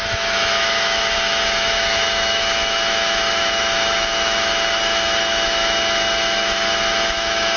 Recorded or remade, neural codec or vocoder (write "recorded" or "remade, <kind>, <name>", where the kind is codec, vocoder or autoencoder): remade, autoencoder, DAC-VAE